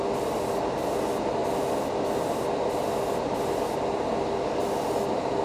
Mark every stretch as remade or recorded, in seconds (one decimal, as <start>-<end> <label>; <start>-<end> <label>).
0.0-5.4 recorded